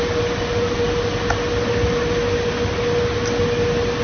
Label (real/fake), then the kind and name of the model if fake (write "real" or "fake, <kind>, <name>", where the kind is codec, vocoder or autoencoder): real